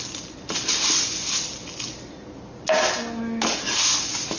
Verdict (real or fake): real